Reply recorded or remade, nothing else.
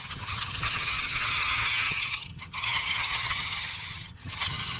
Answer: remade